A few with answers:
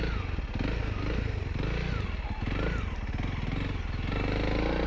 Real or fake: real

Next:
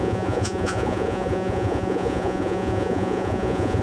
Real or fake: fake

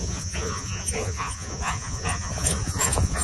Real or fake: fake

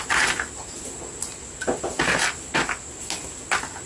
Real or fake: real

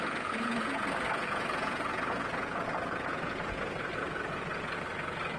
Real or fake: fake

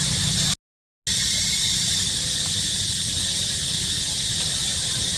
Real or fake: real